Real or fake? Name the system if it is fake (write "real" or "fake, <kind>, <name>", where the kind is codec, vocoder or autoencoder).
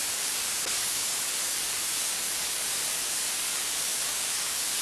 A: fake, codec, DAC